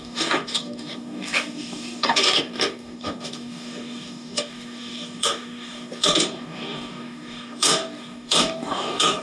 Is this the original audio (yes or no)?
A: no